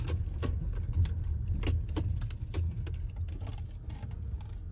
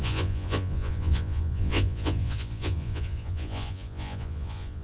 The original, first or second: first